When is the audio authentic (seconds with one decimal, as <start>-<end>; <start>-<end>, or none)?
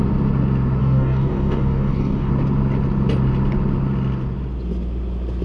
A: 0.0-0.8; 2.3-5.4